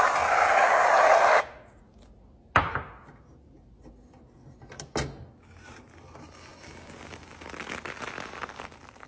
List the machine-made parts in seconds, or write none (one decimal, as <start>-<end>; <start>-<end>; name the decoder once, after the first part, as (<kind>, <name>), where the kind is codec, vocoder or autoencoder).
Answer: none